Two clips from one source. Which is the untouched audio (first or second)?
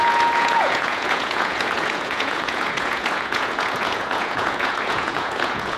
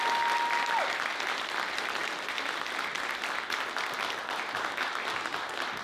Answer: second